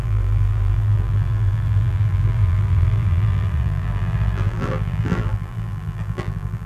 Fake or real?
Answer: fake